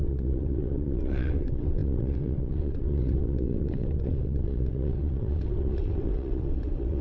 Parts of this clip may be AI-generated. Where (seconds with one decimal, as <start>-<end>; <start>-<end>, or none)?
0.0-7.0